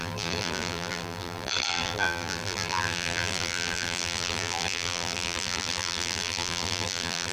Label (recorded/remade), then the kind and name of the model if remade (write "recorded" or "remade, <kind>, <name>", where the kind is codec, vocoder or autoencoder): remade, vocoder, BigVGAN v2